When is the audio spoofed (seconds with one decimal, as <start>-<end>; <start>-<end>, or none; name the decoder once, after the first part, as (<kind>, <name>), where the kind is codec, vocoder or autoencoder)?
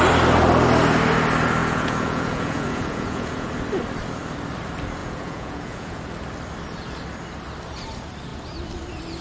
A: 1.6-3.5 (vocoder, Vocos); 5.0-6.0